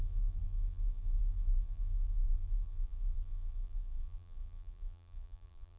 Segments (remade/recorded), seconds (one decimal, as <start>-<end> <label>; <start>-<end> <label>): 0.0-5.8 remade